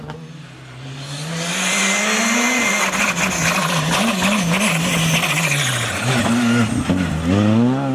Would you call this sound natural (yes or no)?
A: yes